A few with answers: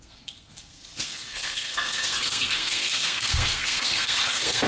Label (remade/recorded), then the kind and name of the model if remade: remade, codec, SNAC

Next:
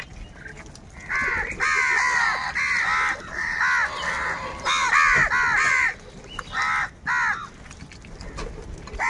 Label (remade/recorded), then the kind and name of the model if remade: recorded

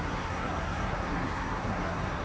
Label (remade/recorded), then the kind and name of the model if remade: remade, codec, SNAC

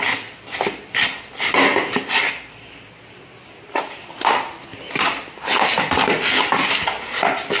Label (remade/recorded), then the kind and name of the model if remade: recorded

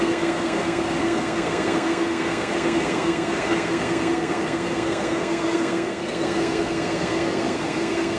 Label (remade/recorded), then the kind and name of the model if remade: remade, codec, SNAC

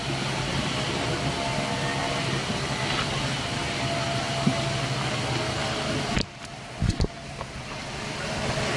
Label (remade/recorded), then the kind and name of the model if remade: recorded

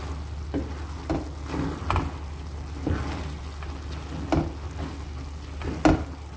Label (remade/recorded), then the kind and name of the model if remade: recorded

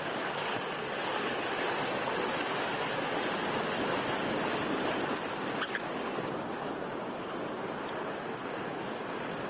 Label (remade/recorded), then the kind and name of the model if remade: recorded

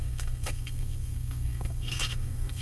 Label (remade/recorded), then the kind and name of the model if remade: remade, codec, SNAC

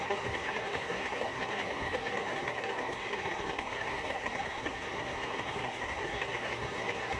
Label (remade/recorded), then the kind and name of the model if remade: remade, codec, SNAC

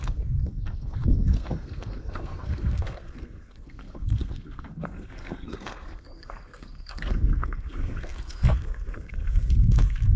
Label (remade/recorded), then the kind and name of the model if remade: remade, codec, SNAC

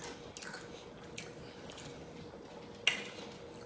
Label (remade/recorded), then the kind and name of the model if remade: recorded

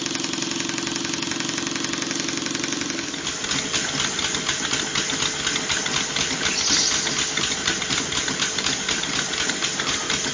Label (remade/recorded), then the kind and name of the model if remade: recorded